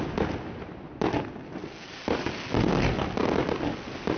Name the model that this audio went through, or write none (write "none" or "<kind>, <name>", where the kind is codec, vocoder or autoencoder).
none